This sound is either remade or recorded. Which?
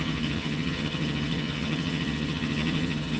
remade